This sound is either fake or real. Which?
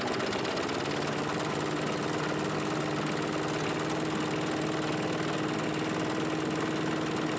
real